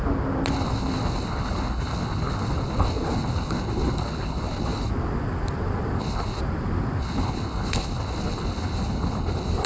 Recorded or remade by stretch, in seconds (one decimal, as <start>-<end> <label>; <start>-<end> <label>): 0.0-0.5 recorded; 0.5-4.9 remade; 4.9-6.0 recorded; 6.0-6.4 remade; 6.4-7.0 recorded; 7.0-9.7 remade